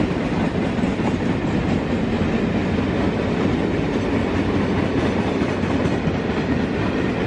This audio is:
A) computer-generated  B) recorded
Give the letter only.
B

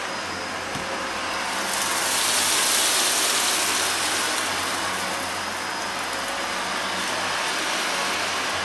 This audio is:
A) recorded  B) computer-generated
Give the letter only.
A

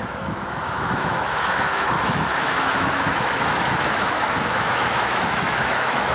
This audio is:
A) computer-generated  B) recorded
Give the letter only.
A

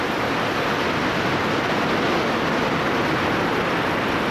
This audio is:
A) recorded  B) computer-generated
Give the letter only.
A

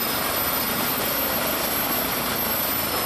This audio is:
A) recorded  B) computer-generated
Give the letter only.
A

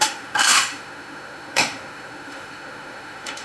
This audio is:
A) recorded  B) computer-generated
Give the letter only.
B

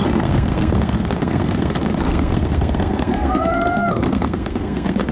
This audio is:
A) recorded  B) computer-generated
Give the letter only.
B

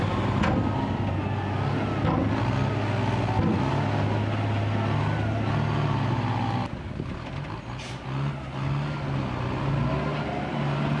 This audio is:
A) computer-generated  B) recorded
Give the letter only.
B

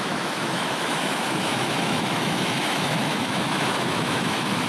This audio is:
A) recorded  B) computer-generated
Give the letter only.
B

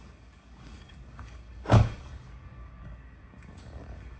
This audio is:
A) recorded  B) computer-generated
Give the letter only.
B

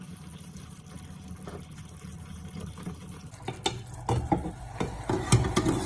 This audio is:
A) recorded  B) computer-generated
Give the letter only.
A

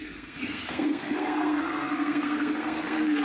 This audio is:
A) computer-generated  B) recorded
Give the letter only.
A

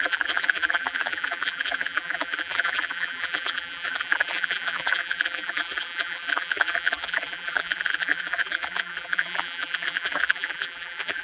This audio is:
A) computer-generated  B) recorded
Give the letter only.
A